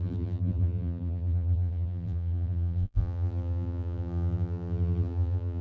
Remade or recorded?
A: remade